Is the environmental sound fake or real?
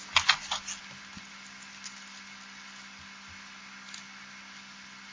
real